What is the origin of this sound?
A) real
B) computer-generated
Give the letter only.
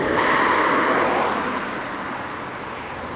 A